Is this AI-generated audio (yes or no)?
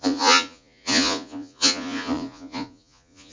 yes